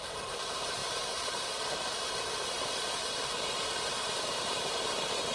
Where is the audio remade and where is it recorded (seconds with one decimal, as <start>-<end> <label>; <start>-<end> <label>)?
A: 0.0-5.3 remade